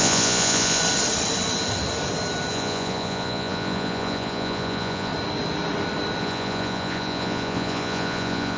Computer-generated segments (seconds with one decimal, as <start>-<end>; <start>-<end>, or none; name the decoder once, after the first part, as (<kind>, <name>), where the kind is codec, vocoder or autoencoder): 0.0-0.8 (vocoder, Vocos); 2.5-5.1; 6.2-8.6